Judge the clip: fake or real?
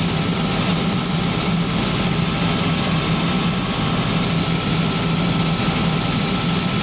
real